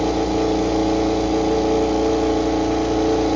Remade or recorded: recorded